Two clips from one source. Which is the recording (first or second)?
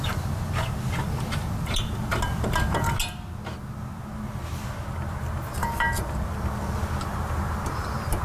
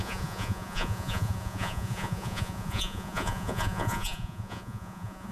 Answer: first